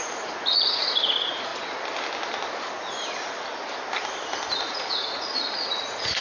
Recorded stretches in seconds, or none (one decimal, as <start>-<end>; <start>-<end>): 1.5-4.7

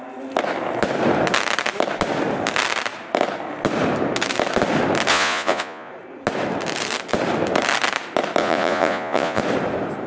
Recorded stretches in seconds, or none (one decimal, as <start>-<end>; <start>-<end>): 0.0-5.1; 5.9-8.4; 9.4-10.1

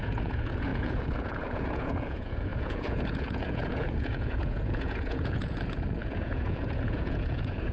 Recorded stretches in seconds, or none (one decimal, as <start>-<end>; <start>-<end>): none

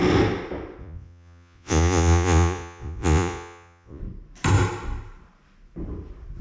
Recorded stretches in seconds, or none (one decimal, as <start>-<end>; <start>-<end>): 0.0-0.8; 4.0-6.4

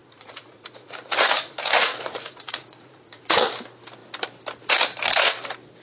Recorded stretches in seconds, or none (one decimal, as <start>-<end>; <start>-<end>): 3.5-5.8

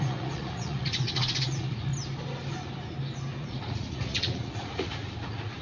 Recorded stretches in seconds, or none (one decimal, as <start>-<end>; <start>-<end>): 1.9-3.4

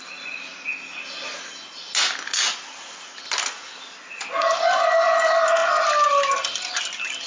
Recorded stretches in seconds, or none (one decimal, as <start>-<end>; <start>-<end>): 0.0-7.3